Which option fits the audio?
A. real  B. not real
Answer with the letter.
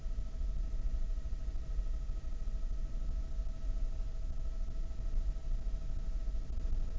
A